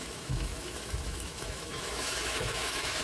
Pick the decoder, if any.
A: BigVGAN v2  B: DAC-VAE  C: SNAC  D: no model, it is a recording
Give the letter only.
B